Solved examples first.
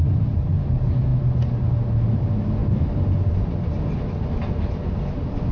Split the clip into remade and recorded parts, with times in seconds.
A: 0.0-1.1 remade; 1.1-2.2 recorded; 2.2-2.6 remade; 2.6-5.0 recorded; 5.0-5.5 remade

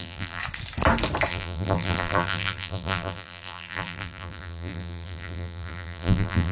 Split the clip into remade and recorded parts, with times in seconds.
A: 0.0-0.4 remade; 0.4-1.3 recorded; 1.3-6.5 remade